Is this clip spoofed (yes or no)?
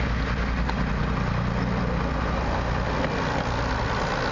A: no